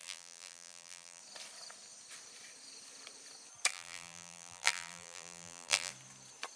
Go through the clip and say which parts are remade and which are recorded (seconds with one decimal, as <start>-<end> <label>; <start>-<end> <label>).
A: 0.0-1.2 remade; 1.2-3.7 recorded; 3.7-5.9 remade; 5.9-6.6 recorded